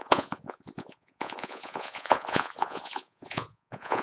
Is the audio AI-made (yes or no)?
yes